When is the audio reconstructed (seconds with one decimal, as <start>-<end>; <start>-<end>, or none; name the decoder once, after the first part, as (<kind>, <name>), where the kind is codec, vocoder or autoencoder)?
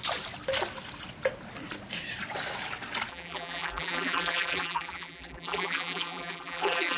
3.1-7.0 (vocoder, BigVGAN v2)